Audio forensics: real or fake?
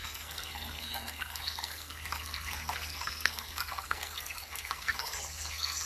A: fake